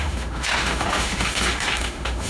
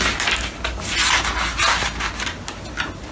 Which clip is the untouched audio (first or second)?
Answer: second